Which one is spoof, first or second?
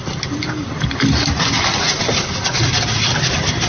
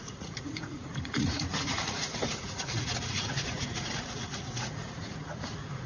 second